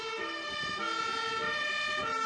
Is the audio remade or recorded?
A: recorded